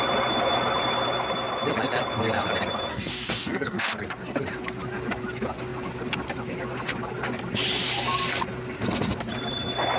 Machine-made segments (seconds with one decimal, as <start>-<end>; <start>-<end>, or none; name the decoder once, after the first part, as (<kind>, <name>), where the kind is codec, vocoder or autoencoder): 2.9-4.0 (codec, SNAC)